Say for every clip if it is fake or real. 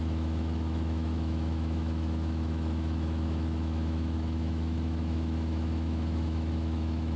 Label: fake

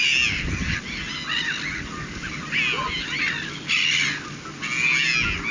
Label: real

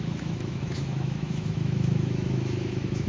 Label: fake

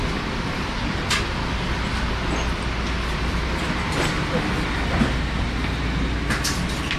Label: real